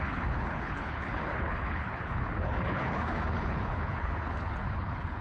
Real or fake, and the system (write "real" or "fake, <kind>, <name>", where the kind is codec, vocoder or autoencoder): fake, codec, HILCodec